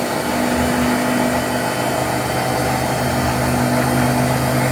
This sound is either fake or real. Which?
real